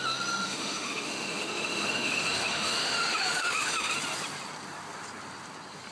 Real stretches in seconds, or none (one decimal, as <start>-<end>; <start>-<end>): 0.0-0.4; 3.9-5.9